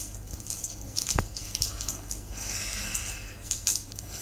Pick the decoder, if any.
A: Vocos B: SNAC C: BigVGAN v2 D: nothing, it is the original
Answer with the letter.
B